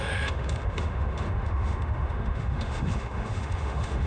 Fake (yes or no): yes